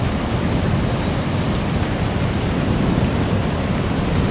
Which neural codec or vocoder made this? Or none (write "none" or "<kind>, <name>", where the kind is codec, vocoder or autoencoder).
vocoder, BigVGAN v2